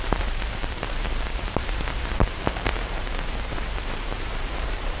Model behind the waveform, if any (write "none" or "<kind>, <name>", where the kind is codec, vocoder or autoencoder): vocoder, BigVGAN v2